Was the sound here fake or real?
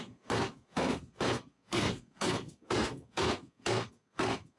fake